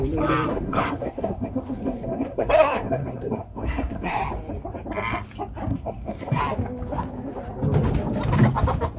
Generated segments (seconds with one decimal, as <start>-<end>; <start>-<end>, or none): 0.5-4.2; 5.7-6.4